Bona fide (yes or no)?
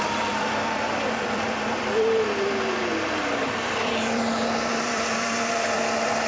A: no